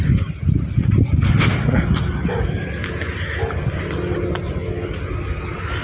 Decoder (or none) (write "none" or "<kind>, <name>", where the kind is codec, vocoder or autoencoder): none